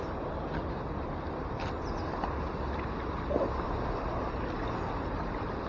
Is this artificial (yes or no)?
no